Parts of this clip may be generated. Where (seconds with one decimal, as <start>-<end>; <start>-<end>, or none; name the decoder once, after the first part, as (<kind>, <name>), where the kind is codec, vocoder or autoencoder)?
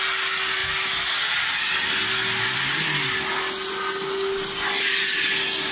none